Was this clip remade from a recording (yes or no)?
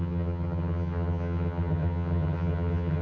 yes